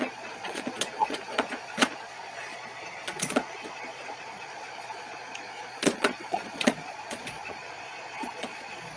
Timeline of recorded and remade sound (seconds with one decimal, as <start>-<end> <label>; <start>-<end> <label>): 0.0-9.0 remade